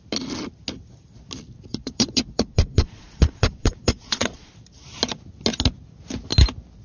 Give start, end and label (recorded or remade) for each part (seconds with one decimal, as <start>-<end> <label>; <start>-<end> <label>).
0.0-1.7 recorded; 1.7-4.5 remade; 4.5-6.8 recorded